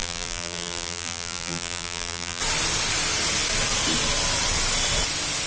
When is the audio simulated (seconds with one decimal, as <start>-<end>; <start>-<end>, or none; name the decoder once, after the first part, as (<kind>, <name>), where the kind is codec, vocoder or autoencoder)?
0.0-2.4 (vocoder, BigVGAN v2)